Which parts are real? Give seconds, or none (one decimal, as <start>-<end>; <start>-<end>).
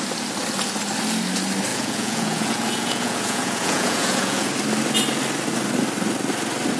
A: 0.0-1.7; 4.5-6.8